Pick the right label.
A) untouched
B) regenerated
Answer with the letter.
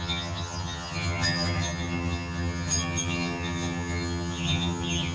B